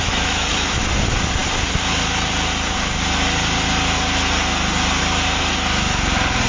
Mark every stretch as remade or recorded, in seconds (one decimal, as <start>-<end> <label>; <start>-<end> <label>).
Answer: 0.0-0.8 remade; 0.8-6.5 recorded